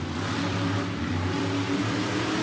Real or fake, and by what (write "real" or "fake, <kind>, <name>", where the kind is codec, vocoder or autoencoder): fake, vocoder, BigVGAN v2